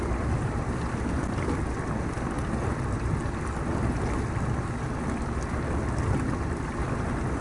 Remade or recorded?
recorded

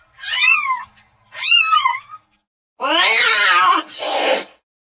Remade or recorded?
recorded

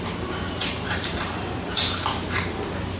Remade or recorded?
remade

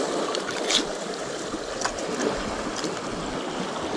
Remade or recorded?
recorded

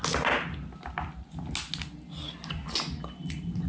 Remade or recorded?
recorded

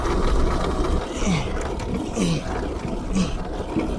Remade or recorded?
recorded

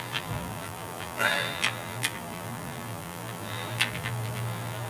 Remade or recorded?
remade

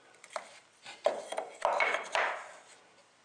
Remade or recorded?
recorded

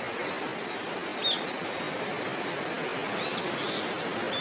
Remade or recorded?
recorded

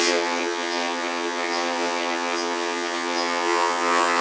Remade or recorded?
remade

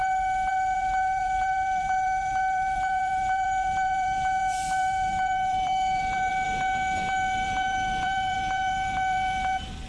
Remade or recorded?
remade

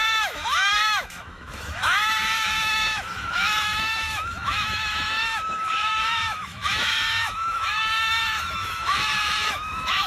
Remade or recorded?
remade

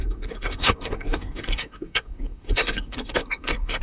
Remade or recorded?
remade